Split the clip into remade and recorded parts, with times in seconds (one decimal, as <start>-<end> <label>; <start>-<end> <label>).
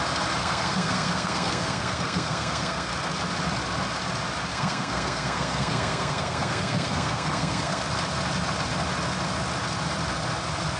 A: 0.0-0.4 recorded; 0.4-2.9 remade; 2.9-4.5 recorded; 4.5-7.8 remade; 7.8-10.8 recorded